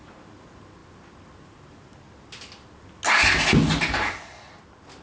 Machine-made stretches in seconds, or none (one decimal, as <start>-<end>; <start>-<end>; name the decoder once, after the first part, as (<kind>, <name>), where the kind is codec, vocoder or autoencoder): none